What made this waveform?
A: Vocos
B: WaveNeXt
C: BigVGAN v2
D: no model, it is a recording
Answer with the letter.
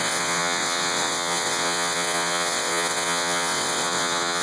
B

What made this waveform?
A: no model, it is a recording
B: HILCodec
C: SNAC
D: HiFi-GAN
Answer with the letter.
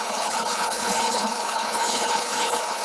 B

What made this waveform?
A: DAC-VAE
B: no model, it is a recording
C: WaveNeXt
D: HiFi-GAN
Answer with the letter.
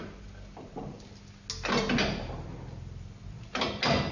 B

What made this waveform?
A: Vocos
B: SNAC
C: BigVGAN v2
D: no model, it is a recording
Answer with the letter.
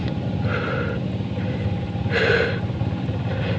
D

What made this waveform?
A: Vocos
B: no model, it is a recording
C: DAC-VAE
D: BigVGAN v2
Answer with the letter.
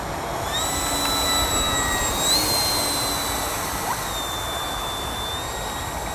B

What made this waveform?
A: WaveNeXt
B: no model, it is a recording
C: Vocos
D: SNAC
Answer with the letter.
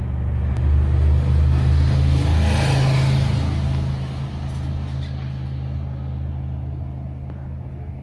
B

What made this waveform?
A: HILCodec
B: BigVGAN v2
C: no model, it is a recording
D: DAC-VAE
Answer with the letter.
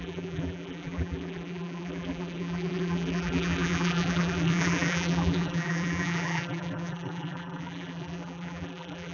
B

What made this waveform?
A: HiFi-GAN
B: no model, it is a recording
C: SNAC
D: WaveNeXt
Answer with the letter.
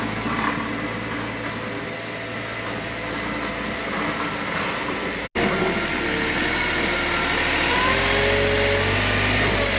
B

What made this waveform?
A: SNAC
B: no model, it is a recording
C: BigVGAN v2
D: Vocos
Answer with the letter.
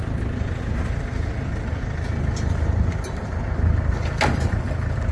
B